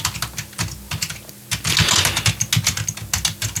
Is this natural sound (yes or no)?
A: yes